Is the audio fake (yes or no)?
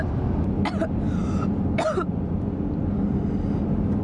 no